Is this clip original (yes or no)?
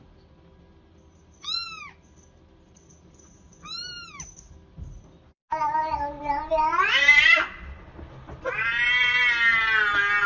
yes